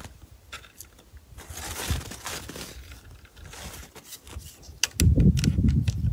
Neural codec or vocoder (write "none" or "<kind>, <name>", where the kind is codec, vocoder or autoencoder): none